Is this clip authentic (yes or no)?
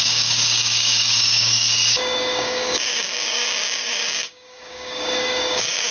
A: no